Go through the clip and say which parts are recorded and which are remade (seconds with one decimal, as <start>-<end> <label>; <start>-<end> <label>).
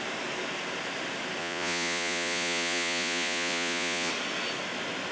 0.0-1.4 recorded; 1.4-4.1 remade; 4.1-5.1 recorded